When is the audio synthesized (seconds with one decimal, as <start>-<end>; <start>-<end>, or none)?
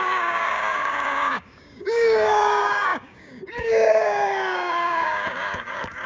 0.0-6.1